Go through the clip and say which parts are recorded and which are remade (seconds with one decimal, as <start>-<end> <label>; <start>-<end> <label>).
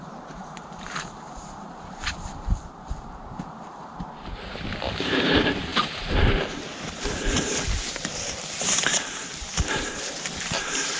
0.0-5.7 remade; 5.7-8.6 recorded; 8.6-11.0 remade